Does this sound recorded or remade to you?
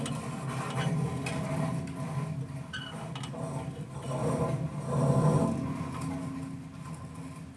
recorded